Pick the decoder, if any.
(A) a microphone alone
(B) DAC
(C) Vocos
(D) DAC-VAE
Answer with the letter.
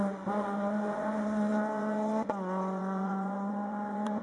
C